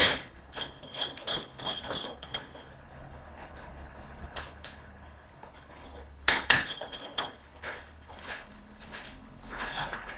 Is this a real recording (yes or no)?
no